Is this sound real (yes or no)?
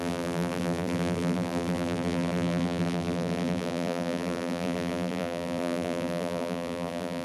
no